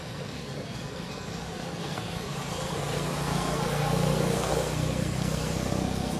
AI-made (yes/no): yes